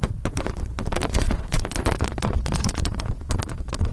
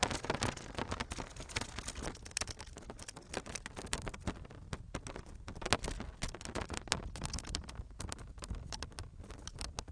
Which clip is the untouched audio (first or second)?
second